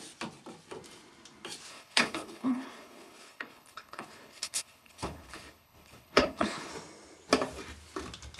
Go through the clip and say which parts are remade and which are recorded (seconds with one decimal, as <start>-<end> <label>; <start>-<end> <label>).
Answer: 0.0-1.7 recorded; 1.7-6.7 remade; 6.7-8.4 recorded